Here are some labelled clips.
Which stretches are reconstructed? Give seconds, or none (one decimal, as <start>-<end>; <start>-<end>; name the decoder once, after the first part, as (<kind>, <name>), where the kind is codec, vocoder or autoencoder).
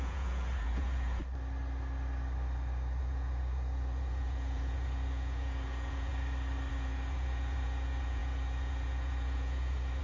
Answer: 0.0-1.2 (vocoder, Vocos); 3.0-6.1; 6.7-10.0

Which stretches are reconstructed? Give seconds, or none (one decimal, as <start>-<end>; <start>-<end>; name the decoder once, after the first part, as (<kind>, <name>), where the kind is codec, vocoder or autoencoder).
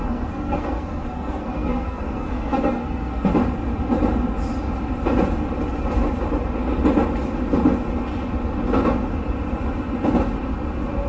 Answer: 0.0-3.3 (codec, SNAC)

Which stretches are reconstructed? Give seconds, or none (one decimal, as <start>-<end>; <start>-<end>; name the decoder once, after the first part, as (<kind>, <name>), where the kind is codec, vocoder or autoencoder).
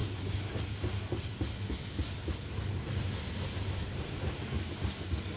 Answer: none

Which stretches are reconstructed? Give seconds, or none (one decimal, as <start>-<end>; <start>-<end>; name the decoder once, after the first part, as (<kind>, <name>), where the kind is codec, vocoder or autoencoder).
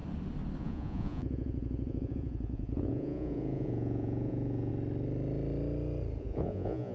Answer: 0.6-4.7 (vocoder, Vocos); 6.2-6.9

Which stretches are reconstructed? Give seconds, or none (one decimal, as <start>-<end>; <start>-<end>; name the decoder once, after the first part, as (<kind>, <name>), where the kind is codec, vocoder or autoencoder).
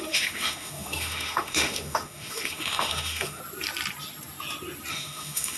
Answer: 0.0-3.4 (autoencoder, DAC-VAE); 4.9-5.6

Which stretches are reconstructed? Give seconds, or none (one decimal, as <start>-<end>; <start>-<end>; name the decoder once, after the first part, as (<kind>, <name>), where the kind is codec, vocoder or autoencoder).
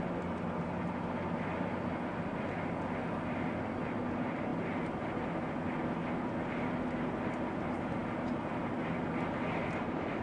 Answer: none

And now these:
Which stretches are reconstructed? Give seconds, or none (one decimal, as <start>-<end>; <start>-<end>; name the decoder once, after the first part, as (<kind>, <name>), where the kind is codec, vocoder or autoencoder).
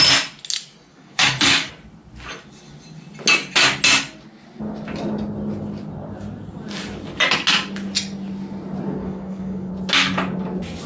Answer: 0.9-1.7 (codec, DAC); 9.0-9.7